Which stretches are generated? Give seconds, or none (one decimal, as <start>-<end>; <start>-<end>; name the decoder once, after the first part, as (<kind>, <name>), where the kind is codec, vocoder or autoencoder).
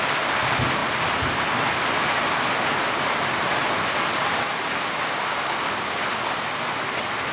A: none